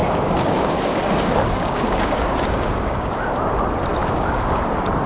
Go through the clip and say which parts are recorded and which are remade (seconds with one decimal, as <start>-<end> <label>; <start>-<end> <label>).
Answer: 0.0-3.1 remade; 3.1-4.0 recorded; 4.0-4.6 remade; 4.6-5.1 recorded